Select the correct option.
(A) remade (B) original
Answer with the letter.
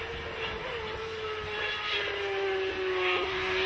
B